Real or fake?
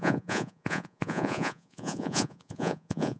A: fake